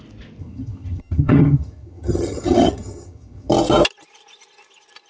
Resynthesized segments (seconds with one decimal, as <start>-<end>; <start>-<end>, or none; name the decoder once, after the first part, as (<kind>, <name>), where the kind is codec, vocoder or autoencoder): 0.4-3.5 (vocoder, HiFi-GAN)